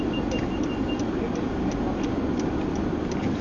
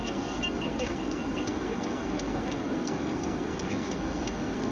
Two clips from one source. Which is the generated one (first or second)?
second